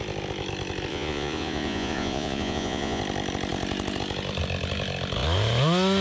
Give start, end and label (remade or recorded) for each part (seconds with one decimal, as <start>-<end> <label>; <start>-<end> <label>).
0.0-0.9 recorded; 0.9-3.0 remade; 3.0-6.0 recorded